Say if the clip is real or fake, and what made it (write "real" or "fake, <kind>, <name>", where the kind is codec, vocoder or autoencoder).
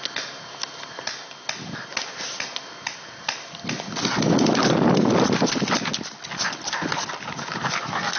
real